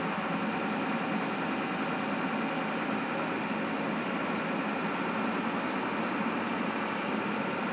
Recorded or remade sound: recorded